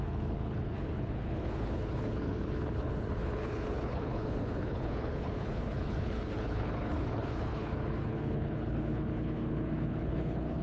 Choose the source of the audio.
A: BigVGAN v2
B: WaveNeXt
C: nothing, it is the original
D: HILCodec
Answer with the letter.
D